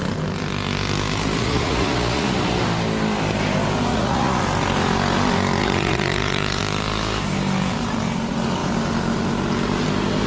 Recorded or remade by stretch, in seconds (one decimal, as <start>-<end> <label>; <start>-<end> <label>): 0.0-1.4 recorded; 1.4-2.3 remade; 2.3-3.9 recorded; 3.9-4.4 remade; 4.4-5.6 recorded; 5.6-6.6 remade; 6.6-10.3 recorded